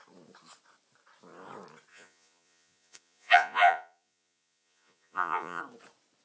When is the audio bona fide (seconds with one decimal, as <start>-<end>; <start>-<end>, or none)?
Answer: 0.0-1.9; 5.6-6.2